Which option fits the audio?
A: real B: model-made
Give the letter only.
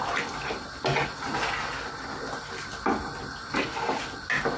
A